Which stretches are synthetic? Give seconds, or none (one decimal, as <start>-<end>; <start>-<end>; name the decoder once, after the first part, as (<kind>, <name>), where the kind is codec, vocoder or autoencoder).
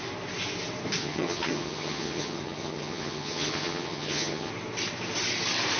1.0-4.5 (vocoder, HiFi-GAN)